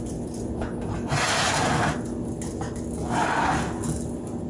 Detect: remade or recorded recorded